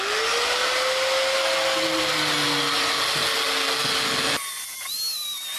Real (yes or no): yes